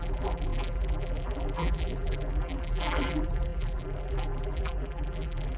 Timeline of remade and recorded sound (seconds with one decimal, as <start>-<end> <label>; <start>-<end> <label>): 0.0-5.6 remade